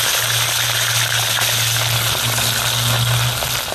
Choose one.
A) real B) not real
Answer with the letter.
A